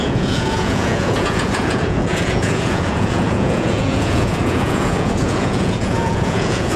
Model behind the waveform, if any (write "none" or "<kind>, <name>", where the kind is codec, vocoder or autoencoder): vocoder, Vocos